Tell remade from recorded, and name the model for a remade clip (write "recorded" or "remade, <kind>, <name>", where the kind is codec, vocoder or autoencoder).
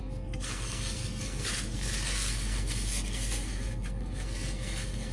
remade, codec, SNAC